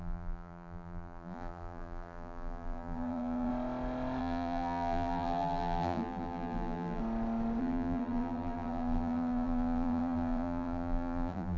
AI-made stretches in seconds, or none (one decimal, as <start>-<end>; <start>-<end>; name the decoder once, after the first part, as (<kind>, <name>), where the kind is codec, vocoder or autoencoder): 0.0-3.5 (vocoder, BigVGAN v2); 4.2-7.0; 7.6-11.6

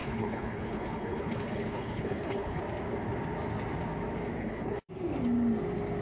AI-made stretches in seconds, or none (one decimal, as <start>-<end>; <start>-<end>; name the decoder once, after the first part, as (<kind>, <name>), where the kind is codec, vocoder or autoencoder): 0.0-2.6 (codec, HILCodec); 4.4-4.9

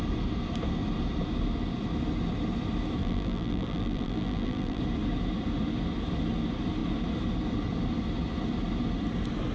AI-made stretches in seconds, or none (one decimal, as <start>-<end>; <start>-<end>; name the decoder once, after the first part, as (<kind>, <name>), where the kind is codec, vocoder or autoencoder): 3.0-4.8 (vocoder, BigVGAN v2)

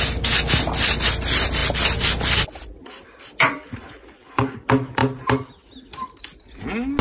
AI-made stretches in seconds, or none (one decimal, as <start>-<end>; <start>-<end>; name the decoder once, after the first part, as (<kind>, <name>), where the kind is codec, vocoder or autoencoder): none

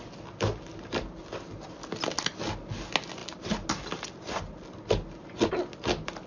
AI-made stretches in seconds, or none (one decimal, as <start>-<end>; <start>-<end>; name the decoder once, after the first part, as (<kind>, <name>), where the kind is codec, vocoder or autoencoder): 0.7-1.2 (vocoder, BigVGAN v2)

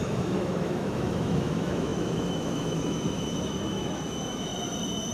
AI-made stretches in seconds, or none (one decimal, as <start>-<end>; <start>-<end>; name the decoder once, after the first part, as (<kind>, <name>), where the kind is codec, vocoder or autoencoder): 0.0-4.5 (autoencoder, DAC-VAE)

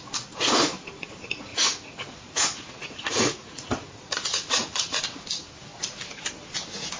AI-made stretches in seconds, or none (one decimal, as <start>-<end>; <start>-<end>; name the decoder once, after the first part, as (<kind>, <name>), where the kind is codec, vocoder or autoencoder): 1.5-5.0 (vocoder, Vocos)